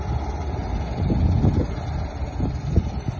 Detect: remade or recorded recorded